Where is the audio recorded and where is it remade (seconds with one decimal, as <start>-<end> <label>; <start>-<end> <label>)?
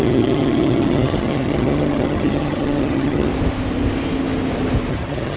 0.0-3.3 remade; 3.3-4.9 recorded; 4.9-5.4 remade